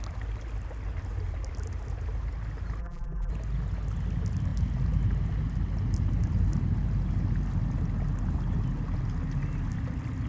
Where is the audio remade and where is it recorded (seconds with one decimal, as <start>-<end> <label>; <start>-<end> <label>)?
0.0-2.8 recorded; 2.8-3.3 remade; 3.3-10.3 recorded